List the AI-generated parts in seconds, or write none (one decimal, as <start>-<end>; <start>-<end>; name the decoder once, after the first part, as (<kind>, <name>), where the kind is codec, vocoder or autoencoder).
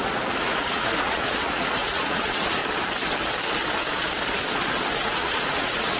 0.0-2.6 (vocoder, Vocos); 4.9-6.0